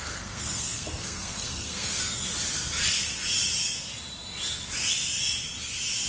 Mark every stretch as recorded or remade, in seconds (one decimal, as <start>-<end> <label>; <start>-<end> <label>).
0.0-2.3 remade; 2.3-6.1 recorded